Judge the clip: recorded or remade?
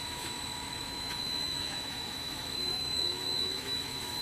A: remade